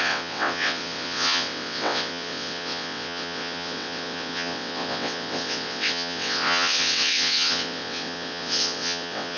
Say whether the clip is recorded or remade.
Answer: remade